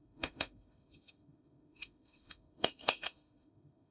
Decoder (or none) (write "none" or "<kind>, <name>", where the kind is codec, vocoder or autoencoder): autoencoder, DAC-VAE